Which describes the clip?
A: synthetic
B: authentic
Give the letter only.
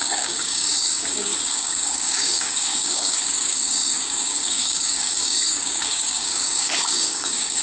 A